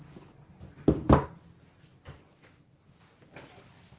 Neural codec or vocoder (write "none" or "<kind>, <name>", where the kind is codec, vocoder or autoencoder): none